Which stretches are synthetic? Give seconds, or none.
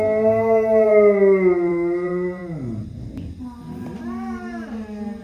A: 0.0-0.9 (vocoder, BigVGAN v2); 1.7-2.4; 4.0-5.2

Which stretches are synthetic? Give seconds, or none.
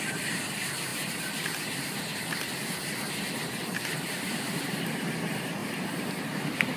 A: 5.6-6.8 (vocoder, BigVGAN v2)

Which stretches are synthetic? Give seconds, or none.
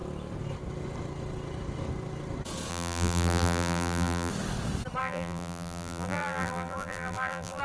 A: 2.7-4.3 (vocoder, BigVGAN v2); 5.0-7.6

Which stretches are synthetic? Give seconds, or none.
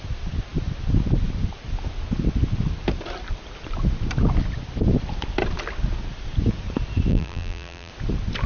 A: 7.1-7.9 (vocoder, BigVGAN v2)